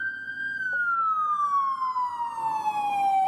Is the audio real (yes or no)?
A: yes